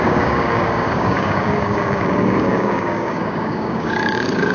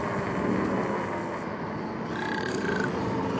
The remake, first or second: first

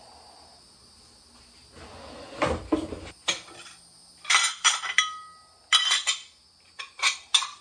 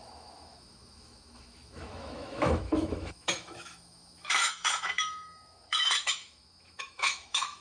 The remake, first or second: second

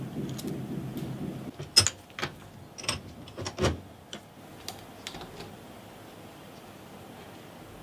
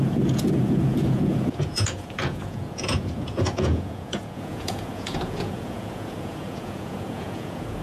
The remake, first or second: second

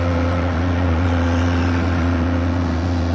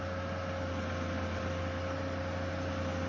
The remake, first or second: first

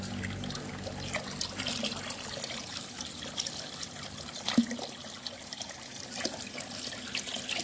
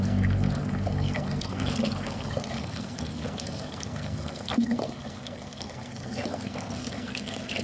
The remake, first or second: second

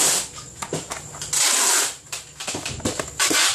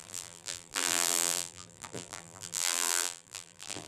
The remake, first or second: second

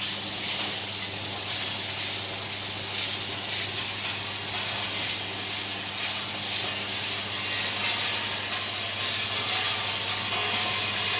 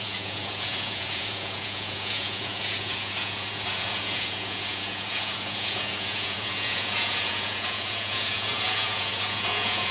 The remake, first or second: second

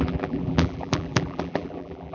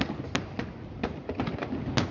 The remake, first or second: first